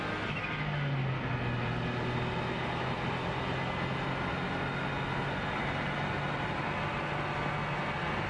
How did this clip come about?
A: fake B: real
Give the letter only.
B